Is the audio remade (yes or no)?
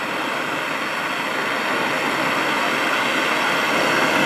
no